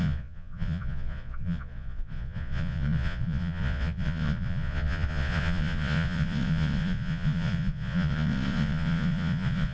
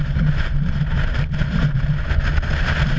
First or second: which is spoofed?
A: first